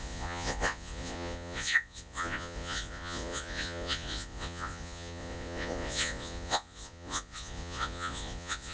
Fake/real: fake